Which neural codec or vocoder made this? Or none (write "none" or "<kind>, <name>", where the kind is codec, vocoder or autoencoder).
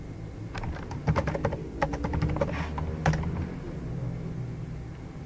none